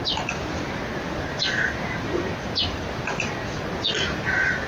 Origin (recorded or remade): recorded